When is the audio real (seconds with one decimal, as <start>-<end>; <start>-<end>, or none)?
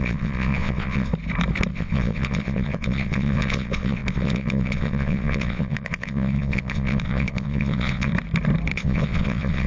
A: 1.1-1.7; 8.1-8.7